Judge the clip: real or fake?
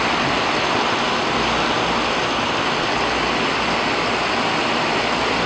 real